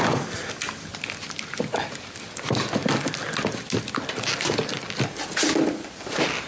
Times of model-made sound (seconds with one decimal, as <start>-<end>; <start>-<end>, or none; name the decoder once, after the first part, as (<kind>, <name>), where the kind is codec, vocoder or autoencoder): none